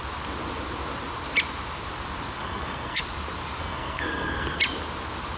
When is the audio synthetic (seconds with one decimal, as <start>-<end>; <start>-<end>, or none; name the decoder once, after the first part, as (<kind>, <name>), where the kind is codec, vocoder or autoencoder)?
2.4-3.0 (codec, SNAC); 3.6-4.6